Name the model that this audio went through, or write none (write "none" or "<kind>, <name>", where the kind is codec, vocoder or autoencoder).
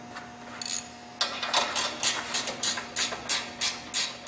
none